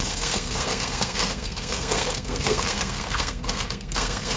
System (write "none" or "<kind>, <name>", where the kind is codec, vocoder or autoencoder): codec, SNAC